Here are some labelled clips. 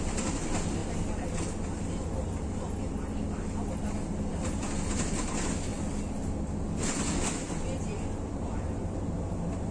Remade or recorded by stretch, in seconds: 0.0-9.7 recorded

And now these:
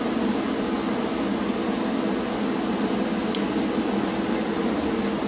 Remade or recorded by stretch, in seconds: 0.0-5.3 recorded